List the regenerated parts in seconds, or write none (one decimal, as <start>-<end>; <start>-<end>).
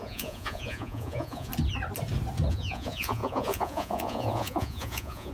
0.0-1.5; 2.5-5.3